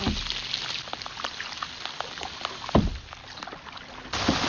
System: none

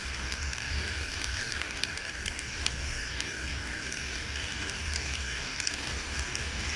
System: codec, DAC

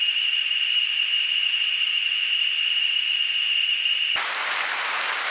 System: vocoder, BigVGAN v2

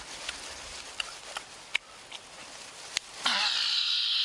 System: none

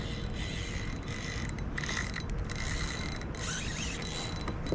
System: none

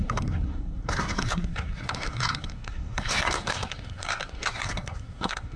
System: codec, SNAC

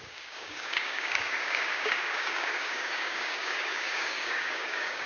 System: codec, DAC